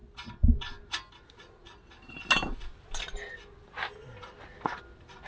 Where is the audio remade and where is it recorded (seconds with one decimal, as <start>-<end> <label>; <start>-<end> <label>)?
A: 0.0-5.3 recorded